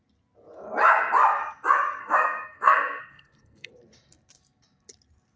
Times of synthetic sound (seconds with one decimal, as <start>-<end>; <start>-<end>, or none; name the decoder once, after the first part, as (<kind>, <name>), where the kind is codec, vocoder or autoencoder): 2.0-3.7 (codec, SNAC)